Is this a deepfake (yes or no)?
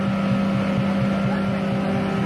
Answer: no